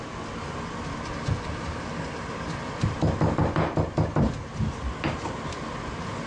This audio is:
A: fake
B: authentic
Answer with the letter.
B